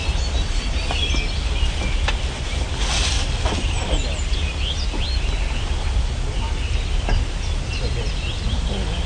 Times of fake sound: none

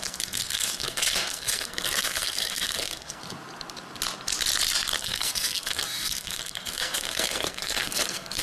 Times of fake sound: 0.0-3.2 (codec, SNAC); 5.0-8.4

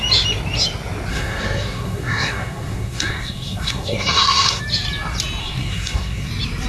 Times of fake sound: 1.1-4.6 (codec, SNAC); 5.4-6.3

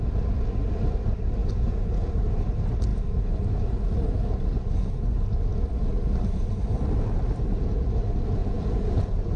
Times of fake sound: 1.4-2.1 (vocoder, Vocos); 8.4-9.4

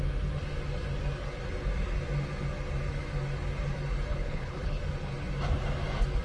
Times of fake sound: 4.1-4.8 (codec, HILCodec)